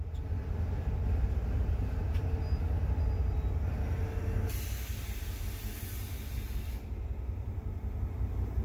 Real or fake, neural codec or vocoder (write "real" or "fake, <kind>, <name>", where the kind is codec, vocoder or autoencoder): real